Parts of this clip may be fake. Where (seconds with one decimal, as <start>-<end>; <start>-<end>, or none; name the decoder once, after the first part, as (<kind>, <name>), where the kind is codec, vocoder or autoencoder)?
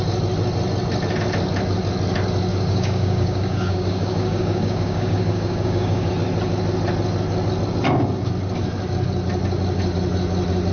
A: 2.5-6.1 (codec, DAC)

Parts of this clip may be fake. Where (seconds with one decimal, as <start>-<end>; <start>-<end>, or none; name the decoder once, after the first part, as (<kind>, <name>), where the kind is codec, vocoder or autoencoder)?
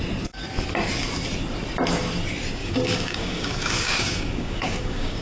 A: 2.6-5.2 (codec, DAC)